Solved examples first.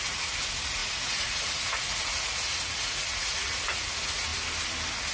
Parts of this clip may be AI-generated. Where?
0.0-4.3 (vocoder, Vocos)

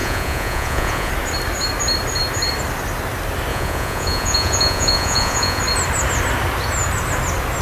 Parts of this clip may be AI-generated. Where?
0.0-1.1 (vocoder, Vocos); 3.5-5.6

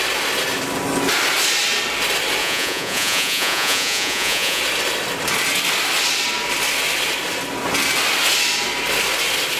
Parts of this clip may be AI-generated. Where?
2.4-4.6 (vocoder, Vocos)